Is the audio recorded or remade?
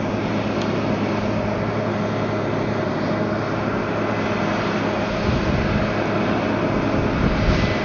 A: recorded